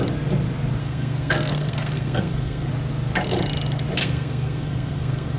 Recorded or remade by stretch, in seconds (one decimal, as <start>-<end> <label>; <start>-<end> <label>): 0.0-0.8 recorded; 0.8-2.7 remade; 2.7-4.0 recorded; 4.0-5.4 remade